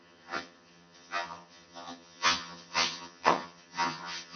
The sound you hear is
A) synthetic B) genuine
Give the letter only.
A